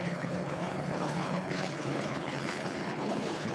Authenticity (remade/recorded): remade